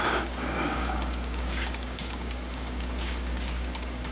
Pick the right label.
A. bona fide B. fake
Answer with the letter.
B